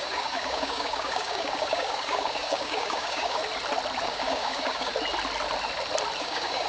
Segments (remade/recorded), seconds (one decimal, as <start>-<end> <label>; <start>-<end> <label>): 0.0-3.4 remade; 3.4-4.0 recorded; 4.0-4.9 remade; 4.9-6.2 recorded; 6.2-6.7 remade